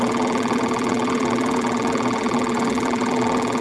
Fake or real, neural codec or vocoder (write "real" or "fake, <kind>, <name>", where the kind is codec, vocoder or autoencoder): fake, vocoder, BigVGAN v2